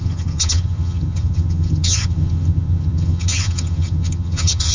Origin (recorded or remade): remade